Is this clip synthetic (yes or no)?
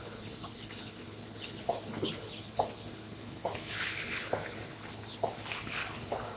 yes